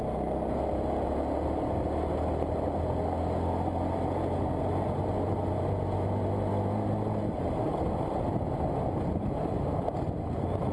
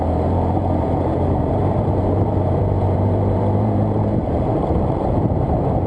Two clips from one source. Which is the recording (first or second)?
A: first